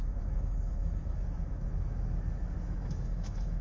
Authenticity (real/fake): fake